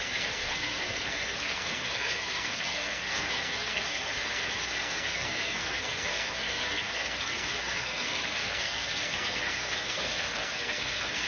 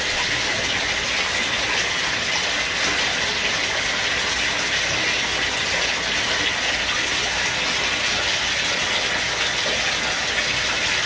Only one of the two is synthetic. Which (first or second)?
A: first